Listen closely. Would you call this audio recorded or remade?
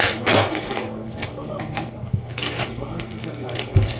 remade